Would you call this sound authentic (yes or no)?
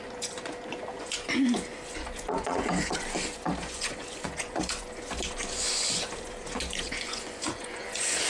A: no